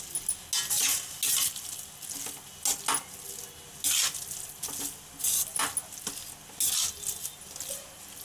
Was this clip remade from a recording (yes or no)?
no